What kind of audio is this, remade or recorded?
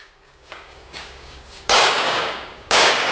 remade